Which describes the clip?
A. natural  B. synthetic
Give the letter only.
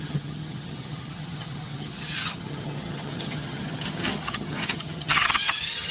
B